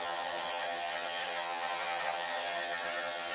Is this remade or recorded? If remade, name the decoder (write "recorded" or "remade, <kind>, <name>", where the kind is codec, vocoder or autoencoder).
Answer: remade, vocoder, HiFi-GAN